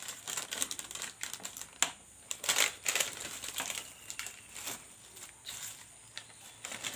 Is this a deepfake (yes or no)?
no